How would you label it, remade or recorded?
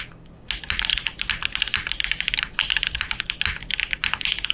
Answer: recorded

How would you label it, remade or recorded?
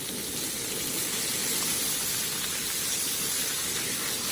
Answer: recorded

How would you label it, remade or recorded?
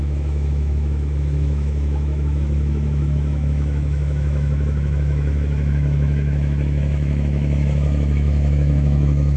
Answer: remade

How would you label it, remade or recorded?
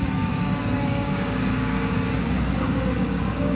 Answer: remade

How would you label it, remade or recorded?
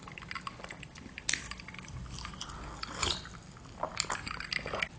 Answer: recorded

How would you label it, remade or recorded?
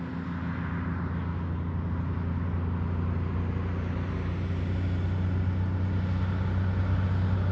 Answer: recorded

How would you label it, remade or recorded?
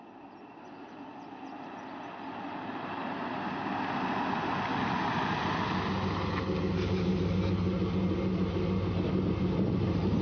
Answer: recorded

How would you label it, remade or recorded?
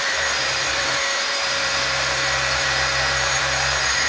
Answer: remade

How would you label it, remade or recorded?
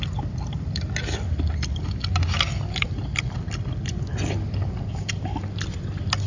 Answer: recorded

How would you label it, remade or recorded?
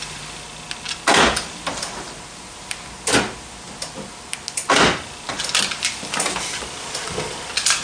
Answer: recorded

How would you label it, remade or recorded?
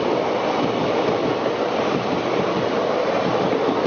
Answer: recorded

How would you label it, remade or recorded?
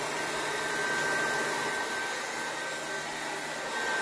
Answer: recorded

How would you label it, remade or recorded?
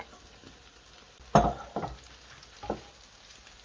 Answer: recorded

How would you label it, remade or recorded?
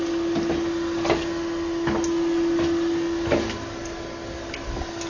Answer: recorded